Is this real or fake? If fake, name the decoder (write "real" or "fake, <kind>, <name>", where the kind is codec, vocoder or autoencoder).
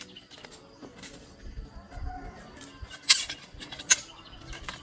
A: real